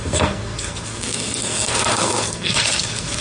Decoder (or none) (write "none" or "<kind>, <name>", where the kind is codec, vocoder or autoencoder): codec, SNAC